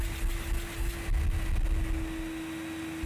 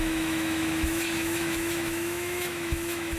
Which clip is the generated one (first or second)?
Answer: second